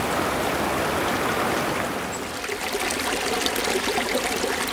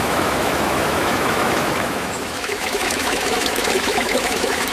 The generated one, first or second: second